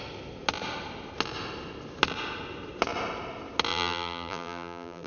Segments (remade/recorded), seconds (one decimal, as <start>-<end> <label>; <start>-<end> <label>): 0.0-3.7 recorded; 3.7-5.1 remade